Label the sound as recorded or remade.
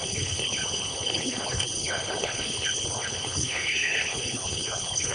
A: remade